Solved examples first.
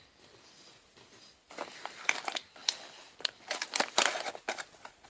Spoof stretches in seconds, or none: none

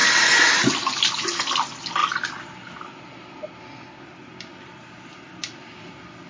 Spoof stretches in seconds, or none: none